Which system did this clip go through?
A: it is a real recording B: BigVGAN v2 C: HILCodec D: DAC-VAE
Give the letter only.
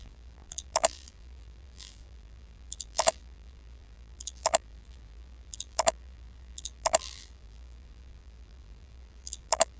B